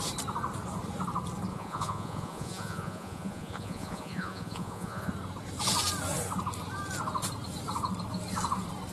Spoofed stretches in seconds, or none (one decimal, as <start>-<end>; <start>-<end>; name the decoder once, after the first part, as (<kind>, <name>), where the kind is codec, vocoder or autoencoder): 1.5-5.1 (vocoder, Vocos)